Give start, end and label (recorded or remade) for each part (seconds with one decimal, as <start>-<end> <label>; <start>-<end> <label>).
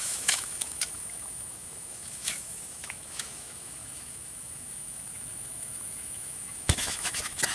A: 0.0-7.5 remade